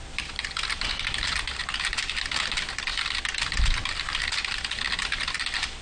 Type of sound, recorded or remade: remade